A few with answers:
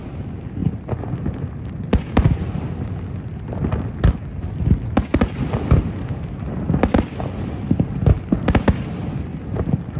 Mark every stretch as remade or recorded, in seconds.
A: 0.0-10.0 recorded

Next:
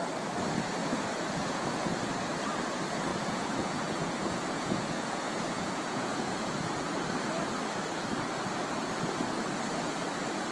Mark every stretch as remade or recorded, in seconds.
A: 0.0-0.8 recorded; 0.8-2.0 remade; 2.0-3.1 recorded; 3.1-6.7 remade; 6.7-10.5 recorded

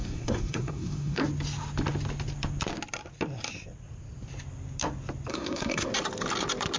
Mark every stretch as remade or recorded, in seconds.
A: 0.0-1.2 remade; 1.2-5.3 recorded; 5.3-5.9 remade; 5.9-6.8 recorded

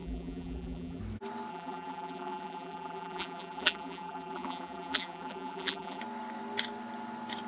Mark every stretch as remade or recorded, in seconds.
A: 0.0-1.0 remade; 1.0-1.5 recorded; 1.5-6.0 remade; 6.0-7.5 recorded